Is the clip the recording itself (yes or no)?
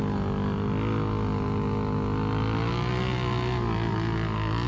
yes